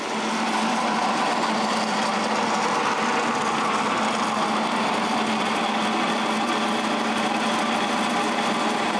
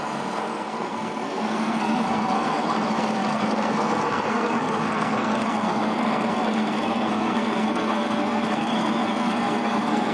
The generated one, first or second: second